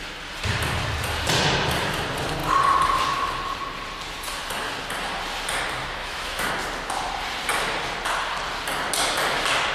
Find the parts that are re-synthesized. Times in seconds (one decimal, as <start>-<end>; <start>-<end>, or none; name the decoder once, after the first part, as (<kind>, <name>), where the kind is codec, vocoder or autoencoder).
6.0-6.5 (autoencoder, DAC-VAE)